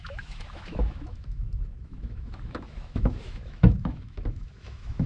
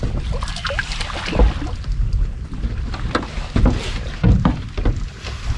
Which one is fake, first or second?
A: first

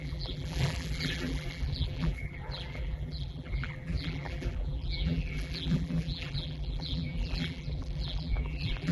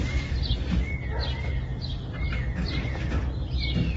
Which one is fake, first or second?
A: first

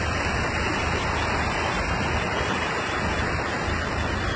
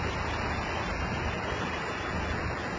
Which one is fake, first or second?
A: first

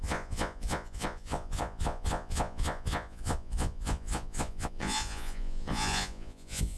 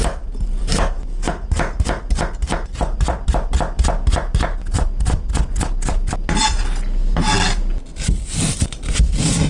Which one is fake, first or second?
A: first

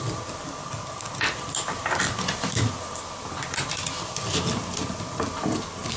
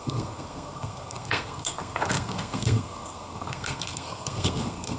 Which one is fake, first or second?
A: second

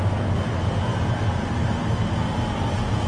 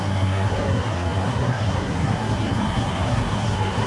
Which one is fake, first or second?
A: second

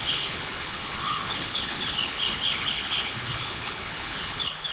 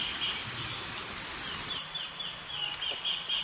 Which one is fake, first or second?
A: first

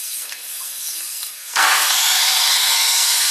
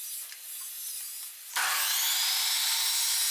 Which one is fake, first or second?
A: first